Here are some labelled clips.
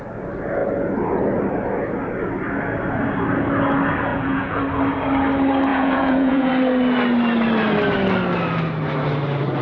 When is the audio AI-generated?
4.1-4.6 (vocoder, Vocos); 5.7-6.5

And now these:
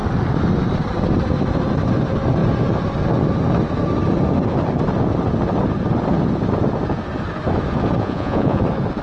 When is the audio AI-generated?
8.0-8.6 (vocoder, Vocos)

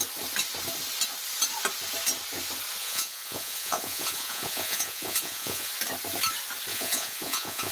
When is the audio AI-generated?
2.8-5.7 (vocoder, Vocos); 6.7-7.7

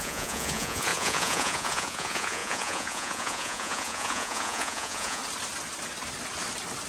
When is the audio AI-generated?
0.0-5.2 (vocoder, Vocos)